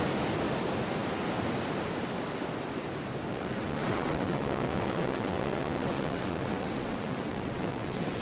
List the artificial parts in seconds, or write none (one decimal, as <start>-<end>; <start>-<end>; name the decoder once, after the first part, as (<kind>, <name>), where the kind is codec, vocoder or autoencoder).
3.3-8.2 (vocoder, WaveNeXt)